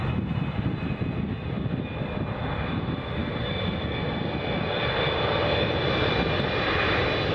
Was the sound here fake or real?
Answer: real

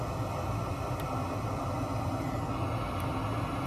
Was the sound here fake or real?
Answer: real